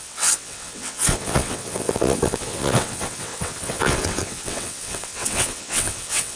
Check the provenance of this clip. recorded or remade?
remade